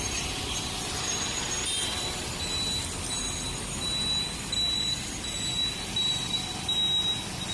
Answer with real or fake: real